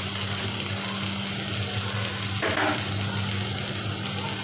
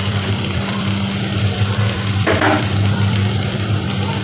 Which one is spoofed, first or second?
second